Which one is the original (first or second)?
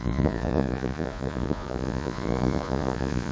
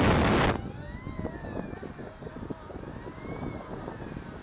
second